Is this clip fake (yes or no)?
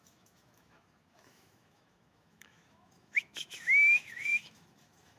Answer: yes